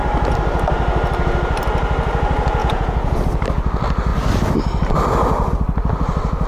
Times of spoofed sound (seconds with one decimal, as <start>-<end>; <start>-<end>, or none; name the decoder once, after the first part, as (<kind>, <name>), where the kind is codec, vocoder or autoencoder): 2.6-3.2 (vocoder, Vocos)